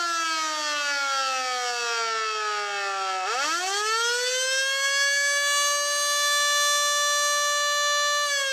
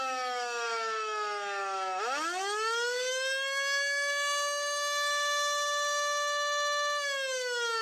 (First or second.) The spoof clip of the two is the second